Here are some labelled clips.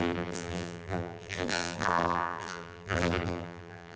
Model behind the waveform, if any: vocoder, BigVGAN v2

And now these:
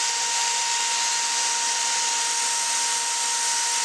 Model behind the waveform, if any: none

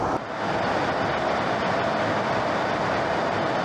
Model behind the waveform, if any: none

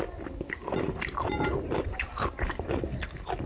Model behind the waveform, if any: none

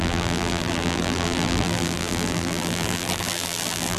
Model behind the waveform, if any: vocoder, BigVGAN v2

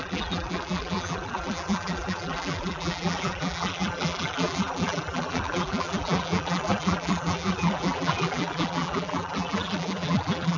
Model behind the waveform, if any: vocoder, BigVGAN v2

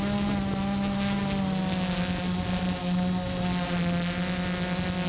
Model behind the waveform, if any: none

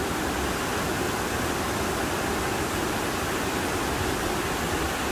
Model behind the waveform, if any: vocoder, BigVGAN v2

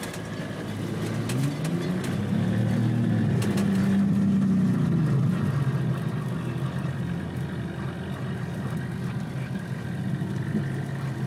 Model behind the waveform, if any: none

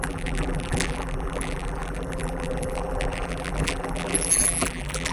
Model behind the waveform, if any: vocoder, BigVGAN v2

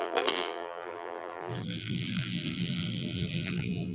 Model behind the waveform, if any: vocoder, BigVGAN v2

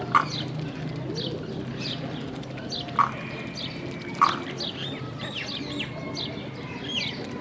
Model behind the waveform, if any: none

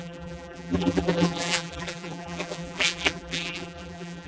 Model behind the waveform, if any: vocoder, BigVGAN v2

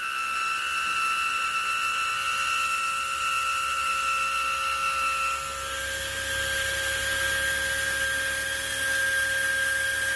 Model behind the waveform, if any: none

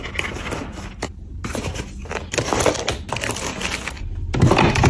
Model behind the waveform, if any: none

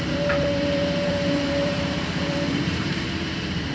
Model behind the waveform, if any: vocoder, BigVGAN v2